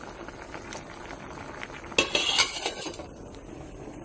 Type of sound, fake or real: real